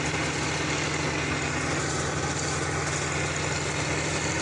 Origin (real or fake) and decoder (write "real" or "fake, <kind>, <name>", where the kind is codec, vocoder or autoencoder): real